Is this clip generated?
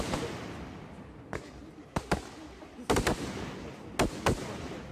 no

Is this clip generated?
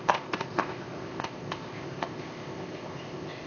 yes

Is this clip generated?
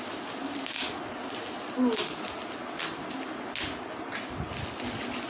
no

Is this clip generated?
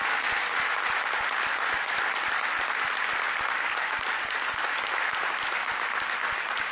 no